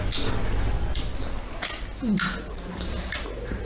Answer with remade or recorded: recorded